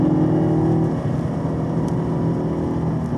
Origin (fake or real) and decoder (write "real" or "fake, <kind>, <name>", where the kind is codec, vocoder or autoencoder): real